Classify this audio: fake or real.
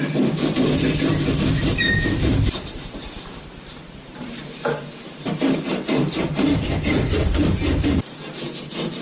fake